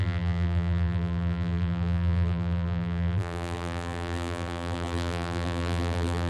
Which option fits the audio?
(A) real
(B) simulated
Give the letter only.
B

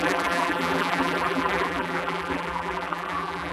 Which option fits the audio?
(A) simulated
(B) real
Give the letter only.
A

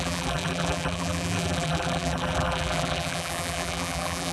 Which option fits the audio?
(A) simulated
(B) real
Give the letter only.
A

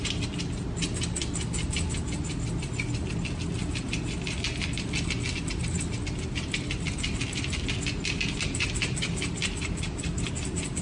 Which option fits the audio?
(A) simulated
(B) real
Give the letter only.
B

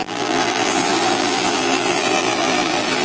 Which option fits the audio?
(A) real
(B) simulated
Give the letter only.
B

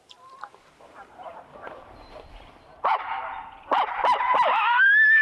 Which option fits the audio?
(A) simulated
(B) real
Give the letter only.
A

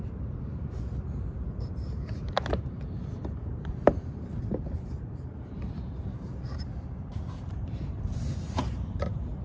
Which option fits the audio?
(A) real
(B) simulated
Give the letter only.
B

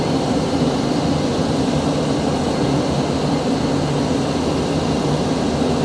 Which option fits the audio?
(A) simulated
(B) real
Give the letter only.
B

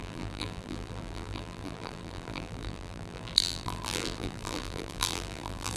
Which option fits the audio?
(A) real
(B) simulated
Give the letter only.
B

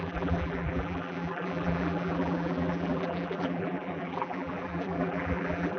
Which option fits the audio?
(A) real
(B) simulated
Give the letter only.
B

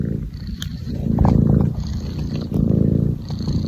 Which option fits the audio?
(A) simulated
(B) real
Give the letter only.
A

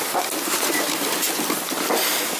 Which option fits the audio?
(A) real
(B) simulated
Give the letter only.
A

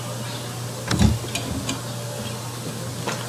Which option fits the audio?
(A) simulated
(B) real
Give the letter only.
B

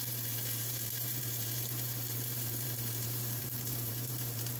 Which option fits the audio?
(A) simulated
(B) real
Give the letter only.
A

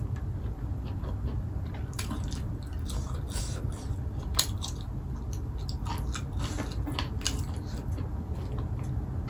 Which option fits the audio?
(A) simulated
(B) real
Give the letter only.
B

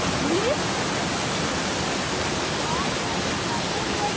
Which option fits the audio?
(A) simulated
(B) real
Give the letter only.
B